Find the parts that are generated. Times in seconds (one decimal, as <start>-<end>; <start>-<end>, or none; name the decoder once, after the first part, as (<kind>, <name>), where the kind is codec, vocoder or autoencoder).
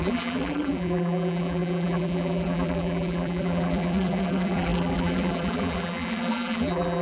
0.0-7.0 (vocoder, BigVGAN v2)